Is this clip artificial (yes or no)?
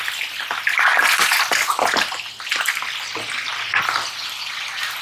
no